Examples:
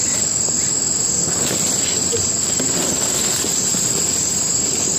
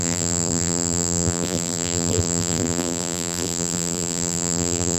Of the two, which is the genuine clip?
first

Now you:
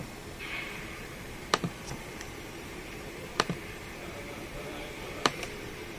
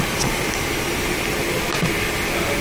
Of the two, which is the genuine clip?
second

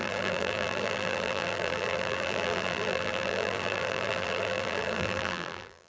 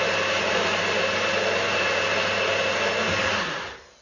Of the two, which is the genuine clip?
second